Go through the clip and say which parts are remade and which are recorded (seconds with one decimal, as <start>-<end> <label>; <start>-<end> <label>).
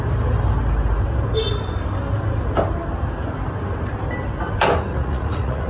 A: 0.0-4.9 recorded; 4.9-5.7 remade